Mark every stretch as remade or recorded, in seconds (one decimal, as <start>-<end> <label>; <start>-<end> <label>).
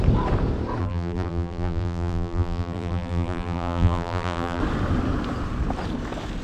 0.0-0.8 recorded; 0.8-4.6 remade; 4.6-6.4 recorded